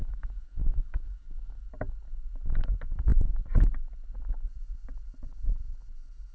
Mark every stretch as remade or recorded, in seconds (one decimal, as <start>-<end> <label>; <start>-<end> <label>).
0.0-1.7 remade; 1.7-6.3 recorded